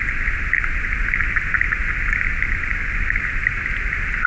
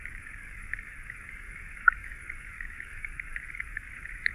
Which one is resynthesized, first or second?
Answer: second